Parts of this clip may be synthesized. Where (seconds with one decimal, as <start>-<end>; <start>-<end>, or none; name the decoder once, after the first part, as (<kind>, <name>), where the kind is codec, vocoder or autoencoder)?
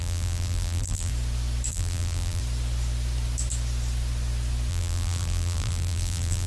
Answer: 0.0-1.1 (vocoder, BigVGAN v2); 1.7-2.4; 4.7-6.5